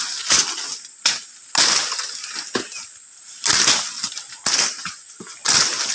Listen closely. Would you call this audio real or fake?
real